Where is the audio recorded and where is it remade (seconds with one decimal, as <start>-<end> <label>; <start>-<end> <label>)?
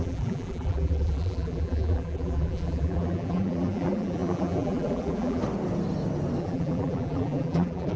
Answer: 0.0-5.4 remade; 5.4-6.4 recorded; 6.4-8.0 remade